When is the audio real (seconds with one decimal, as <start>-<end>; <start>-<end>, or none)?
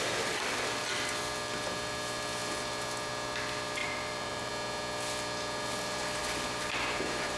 0.0-3.8; 4.5-6.2